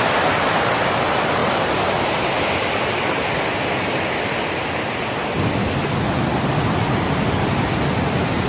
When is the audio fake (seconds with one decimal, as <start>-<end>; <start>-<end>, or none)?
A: 1.4-2.2